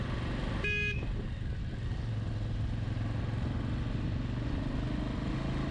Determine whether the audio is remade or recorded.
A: recorded